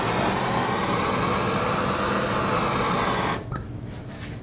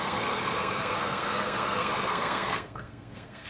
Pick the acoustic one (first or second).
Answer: first